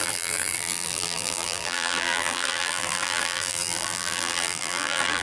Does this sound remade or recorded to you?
remade